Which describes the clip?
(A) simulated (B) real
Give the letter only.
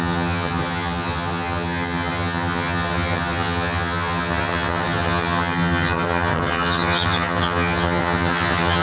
A